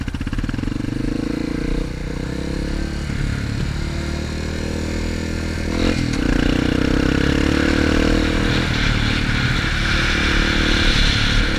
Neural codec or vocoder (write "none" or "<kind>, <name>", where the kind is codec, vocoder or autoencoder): none